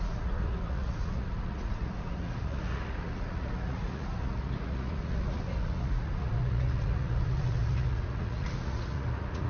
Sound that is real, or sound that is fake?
fake